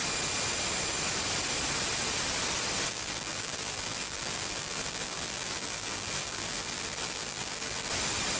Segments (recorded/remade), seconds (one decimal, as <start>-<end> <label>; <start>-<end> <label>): 0.0-2.9 recorded; 2.9-7.9 remade; 7.9-8.4 recorded